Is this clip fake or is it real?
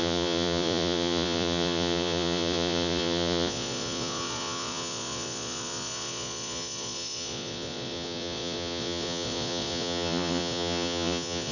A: fake